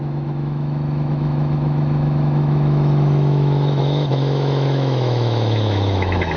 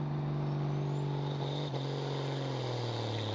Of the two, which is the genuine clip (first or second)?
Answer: second